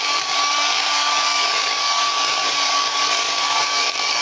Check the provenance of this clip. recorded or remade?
remade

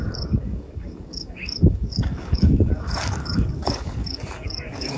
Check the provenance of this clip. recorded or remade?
remade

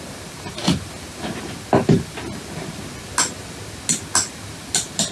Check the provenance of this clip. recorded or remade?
recorded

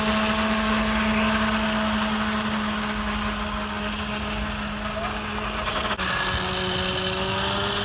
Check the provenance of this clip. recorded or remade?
recorded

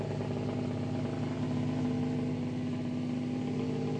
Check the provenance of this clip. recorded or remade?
recorded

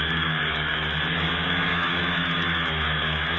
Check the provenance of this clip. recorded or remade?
remade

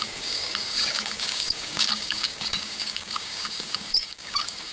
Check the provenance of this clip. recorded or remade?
remade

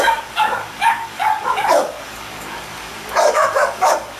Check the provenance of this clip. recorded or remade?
remade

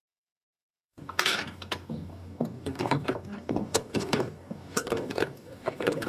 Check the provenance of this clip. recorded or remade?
remade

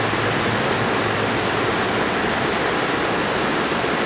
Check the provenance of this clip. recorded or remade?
recorded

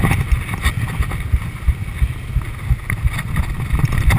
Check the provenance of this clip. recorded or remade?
recorded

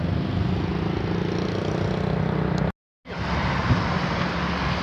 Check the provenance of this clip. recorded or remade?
recorded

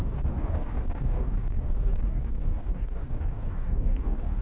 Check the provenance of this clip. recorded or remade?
remade